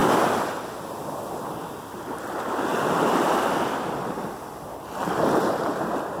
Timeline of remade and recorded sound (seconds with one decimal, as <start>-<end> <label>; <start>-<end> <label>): 0.0-2.7 recorded; 2.7-5.8 remade; 5.8-6.2 recorded